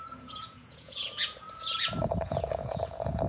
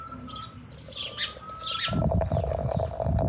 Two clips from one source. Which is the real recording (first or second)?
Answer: second